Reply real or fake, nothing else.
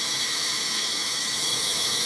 fake